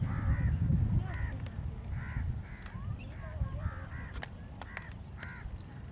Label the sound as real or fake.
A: fake